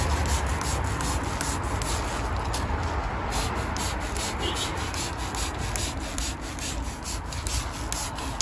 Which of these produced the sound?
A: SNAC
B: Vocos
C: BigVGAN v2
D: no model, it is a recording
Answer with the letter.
D